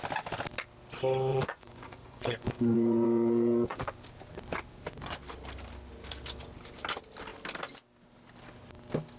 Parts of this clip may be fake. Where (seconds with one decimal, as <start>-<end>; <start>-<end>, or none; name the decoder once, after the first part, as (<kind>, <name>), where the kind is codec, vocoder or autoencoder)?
1.3-3.8 (vocoder, Vocos)